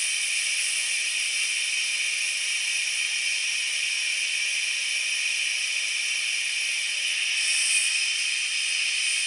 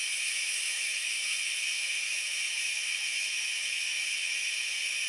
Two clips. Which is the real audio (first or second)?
first